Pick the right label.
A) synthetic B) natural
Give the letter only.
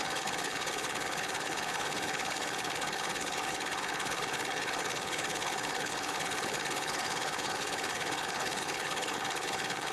A